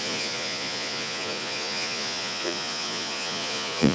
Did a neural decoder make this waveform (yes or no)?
yes